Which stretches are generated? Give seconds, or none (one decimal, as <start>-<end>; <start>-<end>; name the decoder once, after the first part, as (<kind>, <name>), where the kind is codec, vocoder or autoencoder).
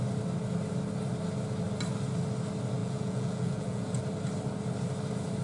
2.8-4.0 (vocoder, Vocos)